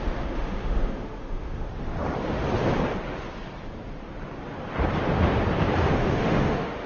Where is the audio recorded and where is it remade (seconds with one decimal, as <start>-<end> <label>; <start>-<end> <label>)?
0.0-1.7 remade; 1.7-5.8 recorded; 5.8-6.9 remade